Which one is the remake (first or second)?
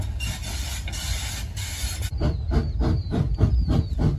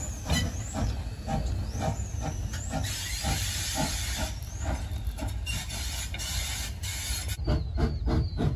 first